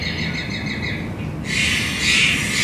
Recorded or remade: recorded